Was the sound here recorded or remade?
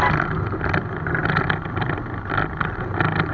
recorded